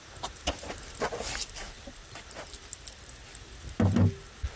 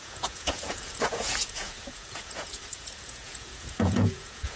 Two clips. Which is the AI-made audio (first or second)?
second